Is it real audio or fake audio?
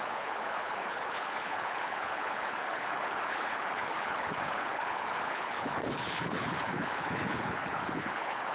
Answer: fake